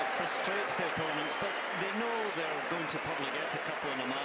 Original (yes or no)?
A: yes